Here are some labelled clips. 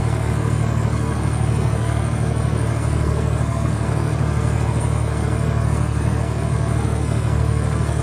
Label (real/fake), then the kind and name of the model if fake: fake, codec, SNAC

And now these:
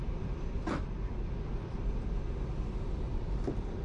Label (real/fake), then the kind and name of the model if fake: real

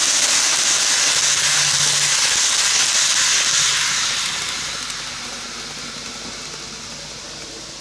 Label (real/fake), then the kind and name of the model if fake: real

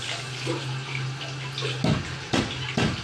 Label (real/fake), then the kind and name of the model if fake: real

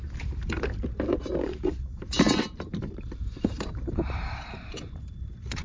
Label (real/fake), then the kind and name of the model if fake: fake, vocoder, BigVGAN v2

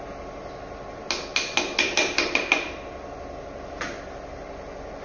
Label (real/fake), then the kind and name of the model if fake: real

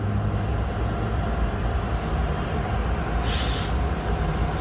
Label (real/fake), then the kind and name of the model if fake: real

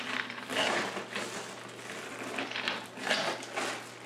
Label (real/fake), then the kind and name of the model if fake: real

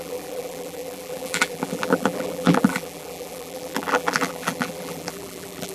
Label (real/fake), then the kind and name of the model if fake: fake, vocoder, BigVGAN v2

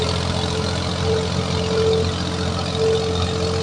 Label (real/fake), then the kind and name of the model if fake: real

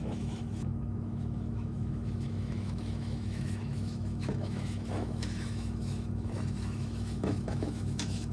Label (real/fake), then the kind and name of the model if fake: fake, autoencoder, DAC-VAE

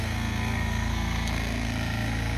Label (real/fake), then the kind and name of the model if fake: fake, codec, SNAC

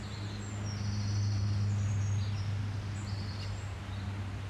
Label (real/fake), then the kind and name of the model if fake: real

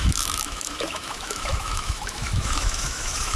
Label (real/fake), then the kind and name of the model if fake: fake, autoencoder, DAC-VAE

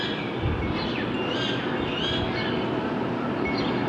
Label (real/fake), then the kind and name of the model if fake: real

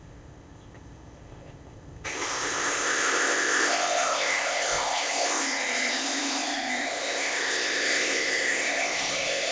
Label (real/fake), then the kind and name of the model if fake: fake, codec, ZipCodec